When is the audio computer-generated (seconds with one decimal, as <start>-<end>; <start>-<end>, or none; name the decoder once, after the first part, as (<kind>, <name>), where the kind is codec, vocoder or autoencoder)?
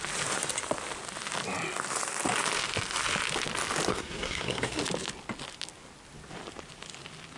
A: 3.9-4.8 (codec, SNAC)